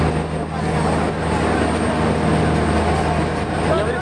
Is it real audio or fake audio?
real